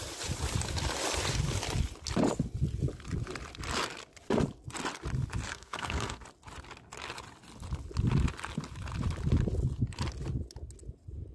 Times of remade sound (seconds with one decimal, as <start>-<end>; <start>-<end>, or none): 5.5-6.2